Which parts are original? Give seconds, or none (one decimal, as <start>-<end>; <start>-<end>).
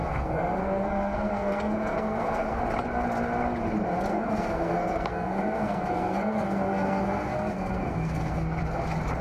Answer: 2.6-4.1; 8.6-9.2